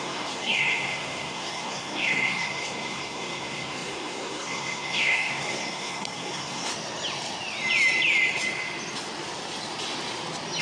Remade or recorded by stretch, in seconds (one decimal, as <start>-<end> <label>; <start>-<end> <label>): 0.0-6.7 remade; 6.7-10.6 recorded